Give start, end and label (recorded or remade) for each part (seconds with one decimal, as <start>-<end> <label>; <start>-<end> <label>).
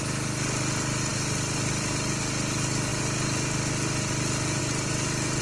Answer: 0.0-5.4 recorded